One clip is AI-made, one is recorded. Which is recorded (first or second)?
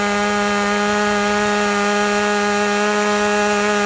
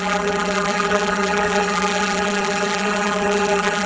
first